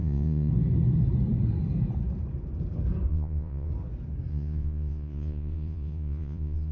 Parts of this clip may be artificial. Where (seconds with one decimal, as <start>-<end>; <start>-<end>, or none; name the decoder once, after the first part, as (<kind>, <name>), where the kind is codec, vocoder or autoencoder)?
0.0-0.5 (vocoder, Vocos); 3.1-3.7; 4.3-6.7